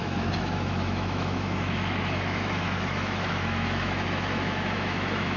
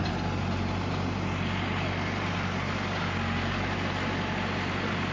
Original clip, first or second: second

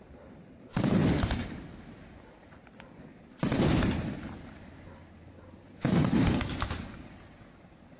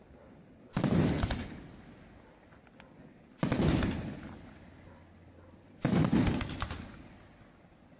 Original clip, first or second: second